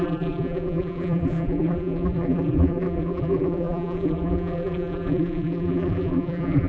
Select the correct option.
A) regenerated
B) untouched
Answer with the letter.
A